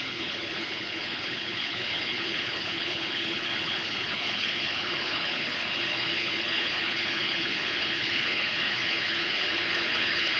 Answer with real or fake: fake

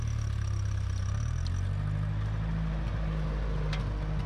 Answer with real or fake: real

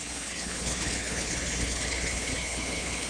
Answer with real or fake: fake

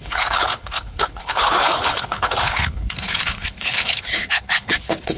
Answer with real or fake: fake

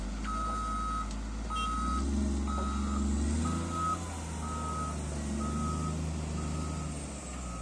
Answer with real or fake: real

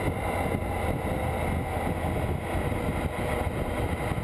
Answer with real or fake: real